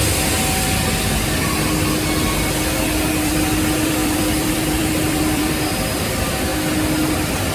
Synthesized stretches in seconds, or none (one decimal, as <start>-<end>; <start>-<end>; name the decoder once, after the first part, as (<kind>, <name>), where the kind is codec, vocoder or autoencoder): 3.2-6.5 (vocoder, BigVGAN v2); 7.1-7.5